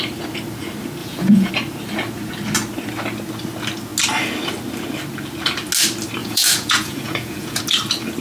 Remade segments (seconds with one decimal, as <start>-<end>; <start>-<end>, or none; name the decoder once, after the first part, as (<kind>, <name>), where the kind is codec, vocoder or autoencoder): 1.0-1.5 (vocoder, Vocos); 6.2-7.6

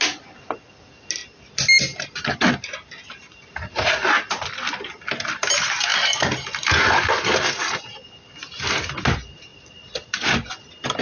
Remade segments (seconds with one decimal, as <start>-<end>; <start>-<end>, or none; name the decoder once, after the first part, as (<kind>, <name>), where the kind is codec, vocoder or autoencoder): 5.9-6.7 (vocoder, BigVGAN v2)

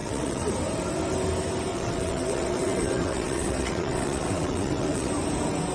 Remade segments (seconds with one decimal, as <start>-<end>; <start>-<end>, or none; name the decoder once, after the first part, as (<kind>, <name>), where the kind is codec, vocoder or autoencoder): 0.0-0.5 (vocoder, WaveNeXt); 1.7-5.1

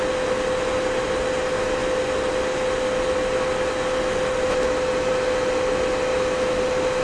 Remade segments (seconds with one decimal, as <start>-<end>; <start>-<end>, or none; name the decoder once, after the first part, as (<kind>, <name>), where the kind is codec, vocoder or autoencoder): 6.1-6.6 (autoencoder, DAC-VAE)

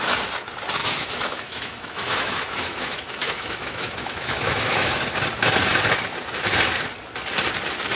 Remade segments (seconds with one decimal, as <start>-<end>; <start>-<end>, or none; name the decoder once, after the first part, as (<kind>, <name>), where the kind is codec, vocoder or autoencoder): 0.8-5.0 (autoencoder, DAC-VAE)